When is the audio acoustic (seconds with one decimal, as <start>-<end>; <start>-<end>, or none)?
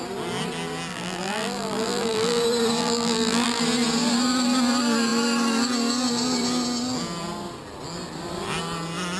0.0-0.9; 2.4-2.8; 3.6-9.2